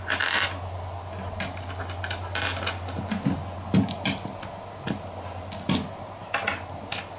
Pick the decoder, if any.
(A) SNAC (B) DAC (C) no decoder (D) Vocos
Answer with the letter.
C